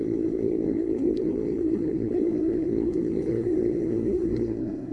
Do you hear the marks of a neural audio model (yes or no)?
yes